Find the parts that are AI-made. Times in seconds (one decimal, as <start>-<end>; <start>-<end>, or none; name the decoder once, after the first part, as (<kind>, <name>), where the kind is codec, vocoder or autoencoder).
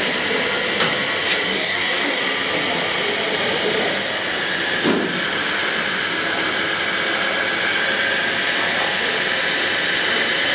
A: 1.5-2.2 (codec, DAC)